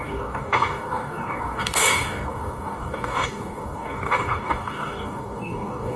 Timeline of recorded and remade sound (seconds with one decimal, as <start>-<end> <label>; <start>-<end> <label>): 0.0-6.0 remade